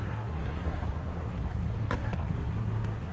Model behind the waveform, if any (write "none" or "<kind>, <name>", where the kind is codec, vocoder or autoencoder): codec, SNAC